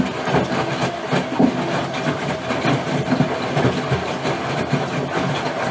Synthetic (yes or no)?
no